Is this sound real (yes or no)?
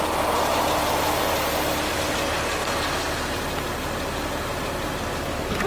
yes